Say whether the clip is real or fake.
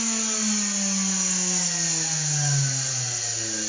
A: real